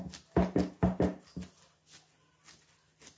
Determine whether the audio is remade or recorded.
recorded